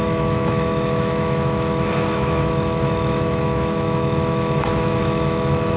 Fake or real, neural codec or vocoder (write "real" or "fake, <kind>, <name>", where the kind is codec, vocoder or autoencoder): fake, autoencoder, DAC-VAE